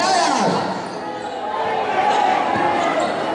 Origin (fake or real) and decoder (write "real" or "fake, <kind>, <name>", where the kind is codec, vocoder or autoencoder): real